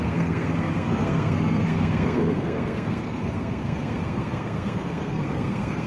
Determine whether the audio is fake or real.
fake